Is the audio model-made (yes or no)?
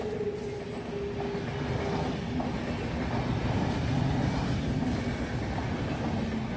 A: no